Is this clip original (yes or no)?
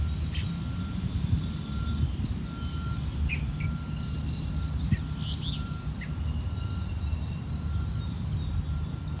yes